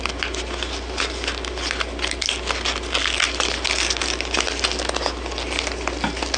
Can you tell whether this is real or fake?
real